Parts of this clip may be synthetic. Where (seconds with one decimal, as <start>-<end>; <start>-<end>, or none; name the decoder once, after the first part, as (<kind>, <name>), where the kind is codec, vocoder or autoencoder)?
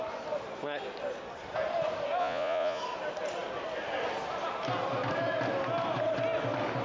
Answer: 2.2-2.8 (vocoder, Vocos)